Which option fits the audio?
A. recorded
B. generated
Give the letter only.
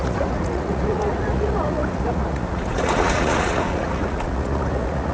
B